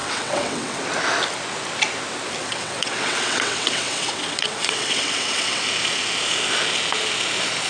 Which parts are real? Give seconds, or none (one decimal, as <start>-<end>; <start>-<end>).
0.8-2.4; 5.6-7.7